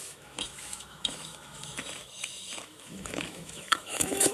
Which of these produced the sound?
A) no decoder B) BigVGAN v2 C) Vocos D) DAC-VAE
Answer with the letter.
D